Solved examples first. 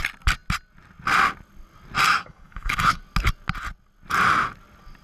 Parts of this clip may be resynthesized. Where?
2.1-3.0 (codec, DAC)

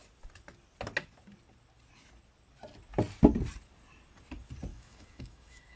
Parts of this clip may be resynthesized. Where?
4.7-5.8 (autoencoder, DAC-VAE)

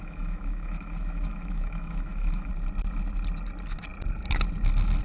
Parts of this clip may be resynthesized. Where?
0.0-2.5 (autoencoder, DAC-VAE)

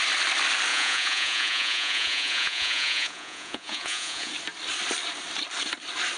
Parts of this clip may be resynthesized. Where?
0.7-4.3 (vocoder, Vocos)